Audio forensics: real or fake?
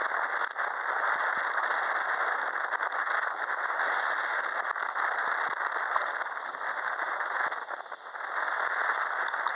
real